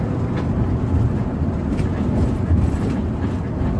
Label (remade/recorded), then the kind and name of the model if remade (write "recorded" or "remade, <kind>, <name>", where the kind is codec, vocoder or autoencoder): recorded